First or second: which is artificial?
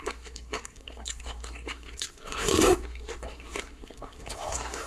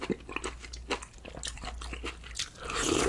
first